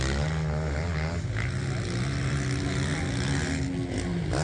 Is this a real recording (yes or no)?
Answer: yes